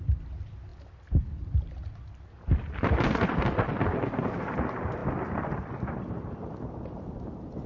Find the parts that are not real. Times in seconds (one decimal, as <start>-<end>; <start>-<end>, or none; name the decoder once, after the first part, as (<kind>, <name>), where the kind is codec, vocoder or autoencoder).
none